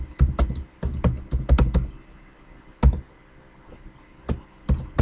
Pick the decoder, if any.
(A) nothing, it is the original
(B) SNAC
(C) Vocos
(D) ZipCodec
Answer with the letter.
A